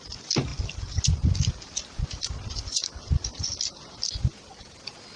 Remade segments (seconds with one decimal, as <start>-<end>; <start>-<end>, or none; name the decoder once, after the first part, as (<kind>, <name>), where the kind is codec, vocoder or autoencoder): 0.5-3.6 (vocoder, BigVGAN v2)